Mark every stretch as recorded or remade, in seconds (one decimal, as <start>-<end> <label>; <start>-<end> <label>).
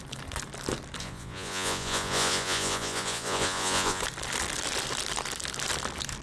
0.0-1.0 recorded; 1.0-4.0 remade; 4.0-6.2 recorded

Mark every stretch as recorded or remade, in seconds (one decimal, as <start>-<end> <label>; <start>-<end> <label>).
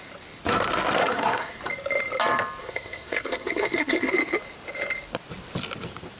0.0-1.0 recorded; 1.0-1.6 remade; 1.6-2.6 recorded; 2.6-4.1 remade; 4.1-6.2 recorded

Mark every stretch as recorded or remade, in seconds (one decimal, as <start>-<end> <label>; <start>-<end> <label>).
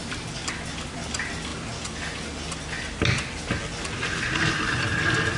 0.0-5.4 recorded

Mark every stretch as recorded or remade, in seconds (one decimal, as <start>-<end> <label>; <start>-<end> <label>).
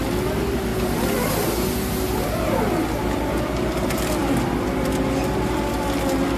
0.0-6.4 recorded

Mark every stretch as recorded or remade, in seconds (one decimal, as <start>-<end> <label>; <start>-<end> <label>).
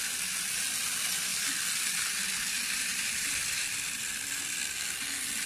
0.0-1.3 recorded; 1.3-4.6 remade; 4.6-5.5 recorded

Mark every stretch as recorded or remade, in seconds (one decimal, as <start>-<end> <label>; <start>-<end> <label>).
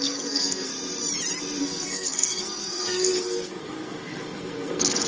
0.0-0.7 remade; 0.7-1.6 recorded; 1.6-5.1 remade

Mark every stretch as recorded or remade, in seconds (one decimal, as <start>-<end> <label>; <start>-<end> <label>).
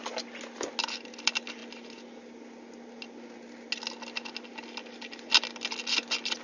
0.0-6.4 recorded